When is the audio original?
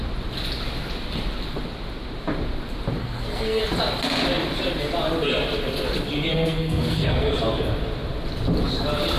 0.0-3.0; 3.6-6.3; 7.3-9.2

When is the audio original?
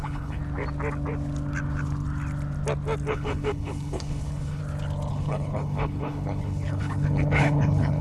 0.4-3.1; 4.6-5.1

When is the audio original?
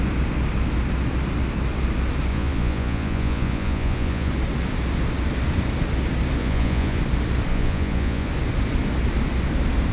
0.0-2.3; 4.3-6.4; 7.0-7.5; 8.3-9.9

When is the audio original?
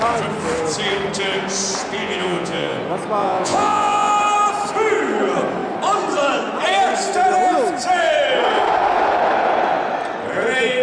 0.0-2.0; 2.8-3.2; 4.1-10.8